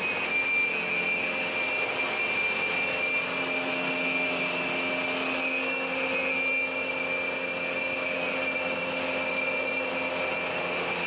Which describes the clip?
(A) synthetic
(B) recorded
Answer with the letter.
B